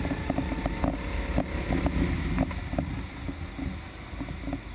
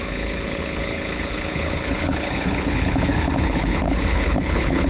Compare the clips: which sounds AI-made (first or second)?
second